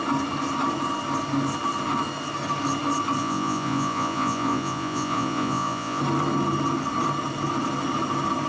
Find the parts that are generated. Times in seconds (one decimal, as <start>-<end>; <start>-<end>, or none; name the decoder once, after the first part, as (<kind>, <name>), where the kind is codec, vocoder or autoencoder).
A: 3.2-6.0 (vocoder, Vocos)